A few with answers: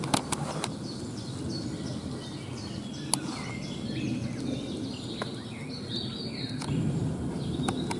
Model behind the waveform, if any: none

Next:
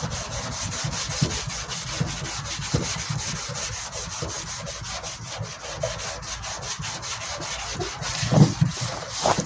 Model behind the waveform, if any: none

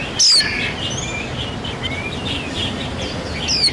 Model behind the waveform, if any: none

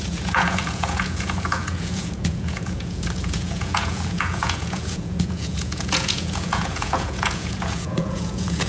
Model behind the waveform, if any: vocoder, Vocos